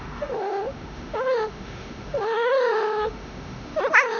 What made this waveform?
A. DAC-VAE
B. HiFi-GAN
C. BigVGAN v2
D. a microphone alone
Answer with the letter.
A